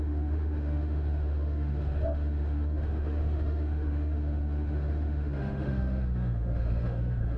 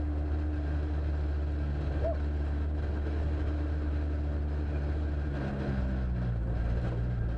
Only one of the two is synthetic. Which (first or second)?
first